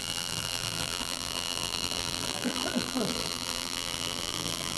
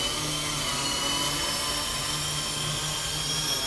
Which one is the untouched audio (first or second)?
second